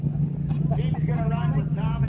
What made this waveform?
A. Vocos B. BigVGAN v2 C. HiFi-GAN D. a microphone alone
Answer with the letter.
D